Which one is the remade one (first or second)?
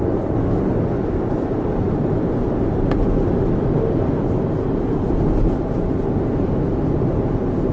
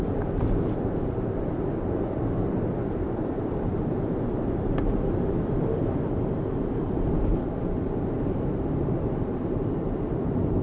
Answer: second